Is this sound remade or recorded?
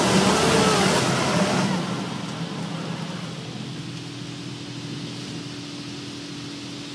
recorded